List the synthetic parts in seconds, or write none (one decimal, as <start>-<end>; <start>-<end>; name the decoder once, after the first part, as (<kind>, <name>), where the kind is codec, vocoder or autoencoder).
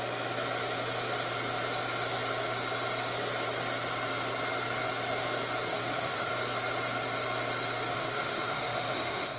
5.7-6.3 (autoencoder, DAC-VAE); 7.9-9.4